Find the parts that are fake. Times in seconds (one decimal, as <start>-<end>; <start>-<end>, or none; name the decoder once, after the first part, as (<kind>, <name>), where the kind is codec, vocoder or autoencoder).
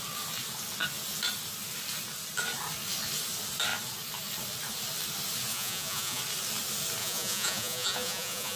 5.5-6.2 (vocoder, Vocos); 7.0-8.6